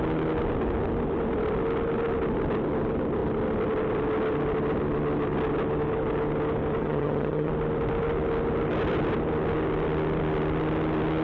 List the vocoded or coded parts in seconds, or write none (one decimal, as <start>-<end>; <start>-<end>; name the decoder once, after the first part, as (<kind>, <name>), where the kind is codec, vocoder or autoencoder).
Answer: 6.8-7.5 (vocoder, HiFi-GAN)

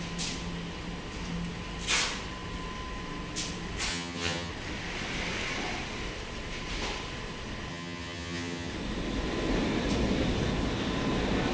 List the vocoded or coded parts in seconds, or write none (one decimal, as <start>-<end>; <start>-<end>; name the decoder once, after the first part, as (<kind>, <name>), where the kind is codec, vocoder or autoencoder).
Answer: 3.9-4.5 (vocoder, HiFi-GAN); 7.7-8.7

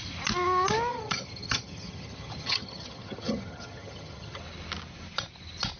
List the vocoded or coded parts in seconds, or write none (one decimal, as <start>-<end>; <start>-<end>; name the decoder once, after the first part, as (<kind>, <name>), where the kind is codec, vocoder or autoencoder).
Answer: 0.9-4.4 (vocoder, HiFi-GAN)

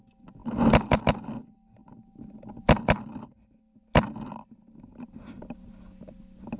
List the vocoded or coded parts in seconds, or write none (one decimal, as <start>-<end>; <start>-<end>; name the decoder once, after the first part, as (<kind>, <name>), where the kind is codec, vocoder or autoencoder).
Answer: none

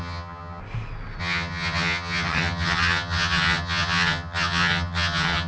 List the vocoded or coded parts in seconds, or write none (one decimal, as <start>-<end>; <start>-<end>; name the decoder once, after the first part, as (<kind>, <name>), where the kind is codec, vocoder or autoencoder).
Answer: 0.0-0.6 (vocoder, HiFi-GAN); 1.2-5.5

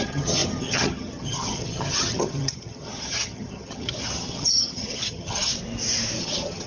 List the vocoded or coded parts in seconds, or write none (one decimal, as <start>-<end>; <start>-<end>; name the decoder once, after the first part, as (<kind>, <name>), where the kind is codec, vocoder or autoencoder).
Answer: 0.0-5.5 (vocoder, HiFi-GAN); 6.2-6.7

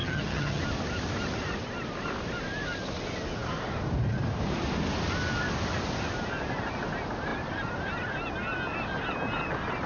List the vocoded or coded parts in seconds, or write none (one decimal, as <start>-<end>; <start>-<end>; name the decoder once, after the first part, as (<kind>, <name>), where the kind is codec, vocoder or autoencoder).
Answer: 0.0-0.6 (vocoder, HiFi-GAN)

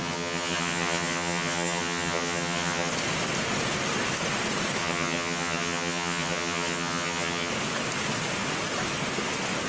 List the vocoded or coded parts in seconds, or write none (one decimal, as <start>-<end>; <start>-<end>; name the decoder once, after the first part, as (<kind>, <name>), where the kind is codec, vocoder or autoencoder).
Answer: 0.0-2.9 (vocoder, HiFi-GAN); 4.8-7.5